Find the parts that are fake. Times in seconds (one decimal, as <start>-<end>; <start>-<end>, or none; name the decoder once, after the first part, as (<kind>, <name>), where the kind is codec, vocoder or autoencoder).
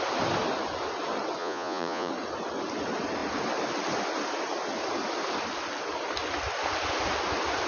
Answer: 1.4-2.1 (vocoder, Vocos)